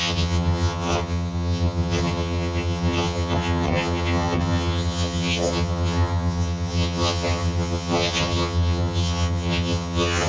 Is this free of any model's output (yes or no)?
no